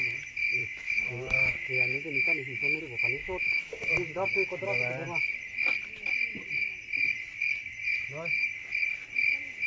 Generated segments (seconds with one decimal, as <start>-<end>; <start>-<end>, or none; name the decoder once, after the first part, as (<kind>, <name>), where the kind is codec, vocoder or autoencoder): 0.6-2.8 (autoencoder, DAC-VAE); 3.2-3.9